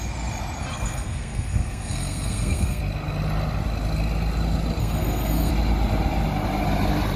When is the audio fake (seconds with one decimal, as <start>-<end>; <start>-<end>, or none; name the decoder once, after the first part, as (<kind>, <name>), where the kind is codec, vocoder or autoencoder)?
0.7-2.8 (codec, SNAC); 4.8-5.5